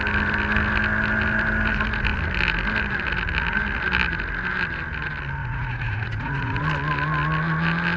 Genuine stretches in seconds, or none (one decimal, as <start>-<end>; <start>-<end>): 0.0-5.4; 6.6-8.0